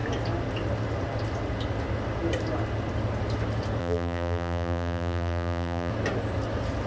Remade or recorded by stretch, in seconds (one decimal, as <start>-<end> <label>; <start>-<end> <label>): 0.0-3.8 recorded; 3.8-5.9 remade; 5.9-6.9 recorded